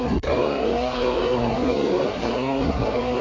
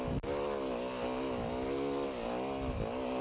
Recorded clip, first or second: second